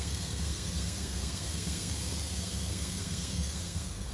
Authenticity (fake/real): fake